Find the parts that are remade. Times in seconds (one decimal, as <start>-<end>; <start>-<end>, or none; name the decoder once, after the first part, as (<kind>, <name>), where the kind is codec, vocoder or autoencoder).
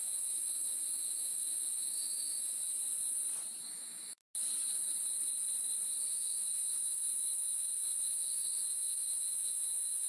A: 0.0-2.6 (autoencoder, DAC-VAE); 3.6-4.2; 6.1-10.1